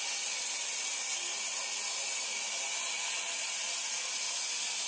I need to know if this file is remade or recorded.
recorded